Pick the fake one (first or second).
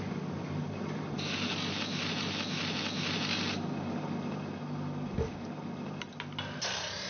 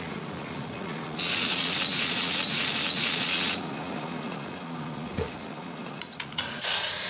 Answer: second